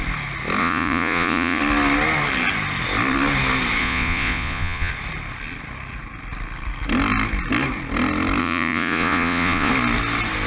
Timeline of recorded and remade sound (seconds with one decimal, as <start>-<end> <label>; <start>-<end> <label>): 0.0-0.6 recorded; 0.6-1.6 remade; 1.6-3.8 recorded; 3.8-4.9 remade; 4.9-8.4 recorded; 8.4-9.7 remade; 9.7-10.5 recorded